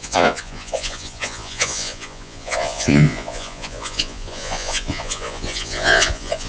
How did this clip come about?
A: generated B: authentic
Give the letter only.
A